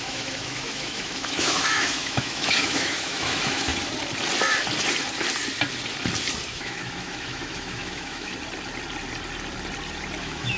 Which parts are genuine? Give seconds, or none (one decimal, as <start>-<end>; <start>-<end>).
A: 3.7-6.5; 8.3-10.2